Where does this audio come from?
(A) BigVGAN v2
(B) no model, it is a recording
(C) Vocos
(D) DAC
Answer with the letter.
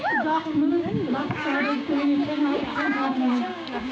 D